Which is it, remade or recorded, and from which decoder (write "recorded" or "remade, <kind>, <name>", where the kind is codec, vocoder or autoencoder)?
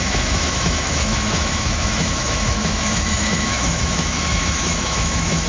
remade, autoencoder, DAC-VAE